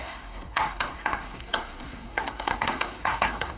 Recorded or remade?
remade